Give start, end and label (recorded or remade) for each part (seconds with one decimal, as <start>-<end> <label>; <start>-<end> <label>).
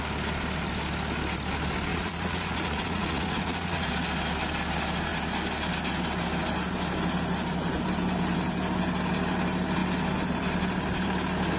0.0-1.9 recorded; 1.9-3.9 remade; 3.9-11.6 recorded